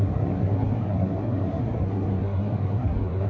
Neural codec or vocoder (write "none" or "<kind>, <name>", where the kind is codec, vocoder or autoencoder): codec, SNAC